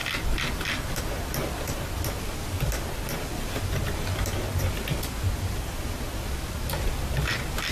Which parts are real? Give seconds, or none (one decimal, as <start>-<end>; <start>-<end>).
none